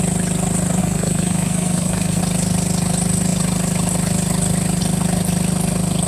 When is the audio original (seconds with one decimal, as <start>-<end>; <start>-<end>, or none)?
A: 0.0-0.8; 2.2-6.1